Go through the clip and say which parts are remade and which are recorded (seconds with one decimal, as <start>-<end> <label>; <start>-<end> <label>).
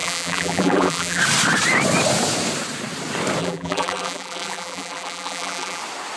0.0-1.2 remade; 1.2-3.4 recorded; 3.4-5.8 remade; 5.8-6.2 recorded